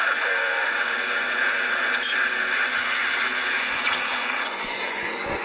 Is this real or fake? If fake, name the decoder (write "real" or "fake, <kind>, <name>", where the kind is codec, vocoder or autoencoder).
fake, vocoder, Vocos